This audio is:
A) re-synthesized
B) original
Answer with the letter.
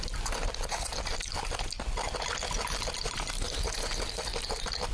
B